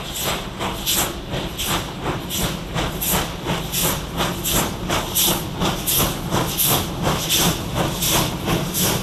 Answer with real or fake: real